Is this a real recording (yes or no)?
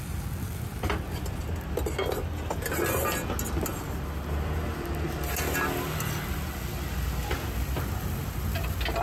yes